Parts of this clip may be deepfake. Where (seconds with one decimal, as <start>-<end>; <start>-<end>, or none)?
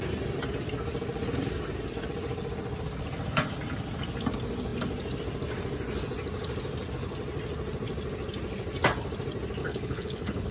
9.6-10.5